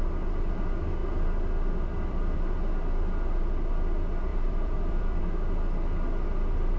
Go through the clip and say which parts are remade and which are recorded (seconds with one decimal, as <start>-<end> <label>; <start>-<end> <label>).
0.0-4.3 recorded; 4.3-5.2 remade; 5.2-6.8 recorded